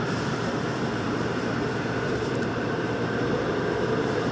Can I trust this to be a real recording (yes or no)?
no